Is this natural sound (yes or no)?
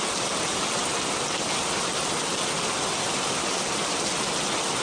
yes